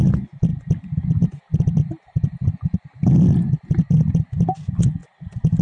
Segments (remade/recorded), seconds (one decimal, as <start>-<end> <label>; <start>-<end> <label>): 0.0-5.6 recorded